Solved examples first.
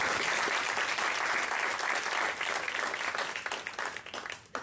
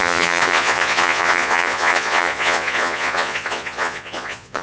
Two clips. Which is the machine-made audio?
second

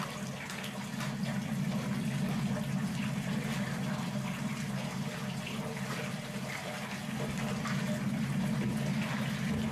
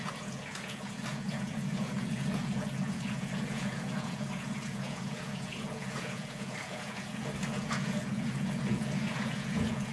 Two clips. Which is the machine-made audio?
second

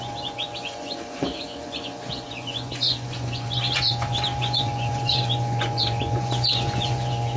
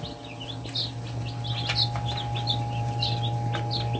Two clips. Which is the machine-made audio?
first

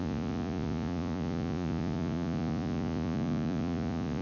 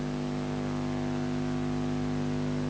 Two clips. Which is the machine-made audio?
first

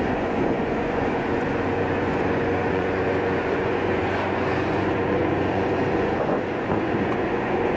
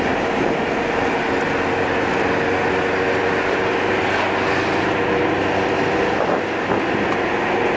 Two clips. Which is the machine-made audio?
first